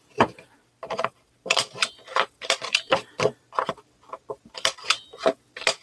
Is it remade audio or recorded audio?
remade